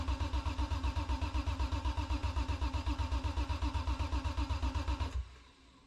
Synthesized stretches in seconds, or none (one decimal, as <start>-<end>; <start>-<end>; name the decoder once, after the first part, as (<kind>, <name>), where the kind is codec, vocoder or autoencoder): none